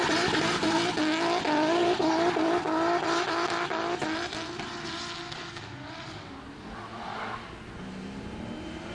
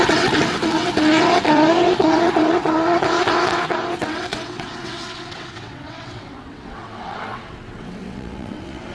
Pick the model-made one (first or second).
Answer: second